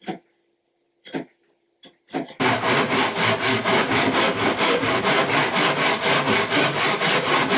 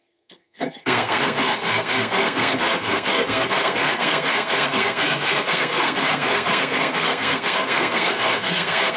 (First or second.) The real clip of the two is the first